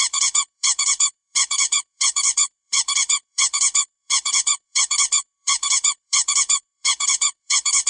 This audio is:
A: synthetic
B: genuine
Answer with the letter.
A